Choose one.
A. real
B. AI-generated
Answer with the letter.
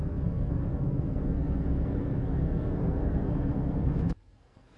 B